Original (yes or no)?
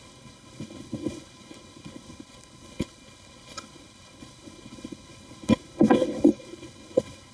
no